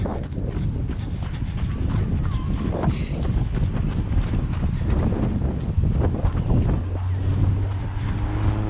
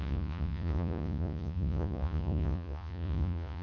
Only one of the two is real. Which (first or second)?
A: first